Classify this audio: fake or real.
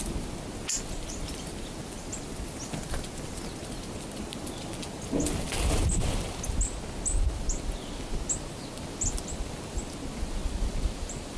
real